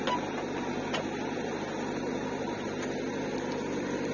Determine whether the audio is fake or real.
real